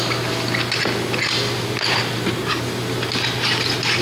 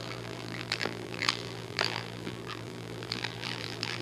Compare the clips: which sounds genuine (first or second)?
first